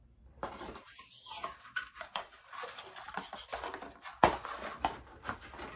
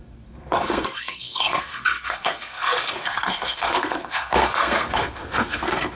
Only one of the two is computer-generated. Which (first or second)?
second